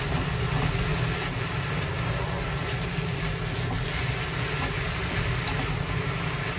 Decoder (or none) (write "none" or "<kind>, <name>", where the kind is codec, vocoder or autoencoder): none